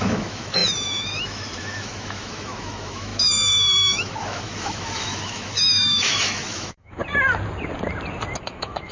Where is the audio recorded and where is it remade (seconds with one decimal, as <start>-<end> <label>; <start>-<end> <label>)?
0.0-7.0 remade; 7.0-8.4 recorded; 8.4-8.9 remade